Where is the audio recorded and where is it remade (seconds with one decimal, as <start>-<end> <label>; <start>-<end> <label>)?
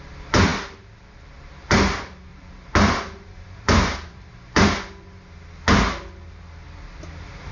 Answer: 0.0-2.3 recorded; 2.3-4.7 remade; 4.7-7.5 recorded